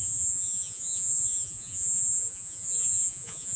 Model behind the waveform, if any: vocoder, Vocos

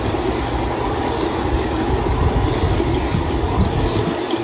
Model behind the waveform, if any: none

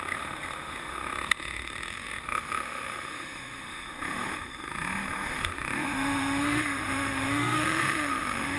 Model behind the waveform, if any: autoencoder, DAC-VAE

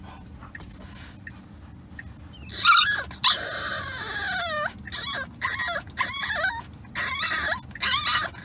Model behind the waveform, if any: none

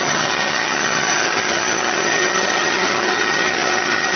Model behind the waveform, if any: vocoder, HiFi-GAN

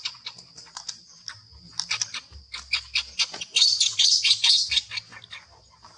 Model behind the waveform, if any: none